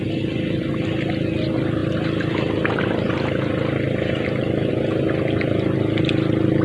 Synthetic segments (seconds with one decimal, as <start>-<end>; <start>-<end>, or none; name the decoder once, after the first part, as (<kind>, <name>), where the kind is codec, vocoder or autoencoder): none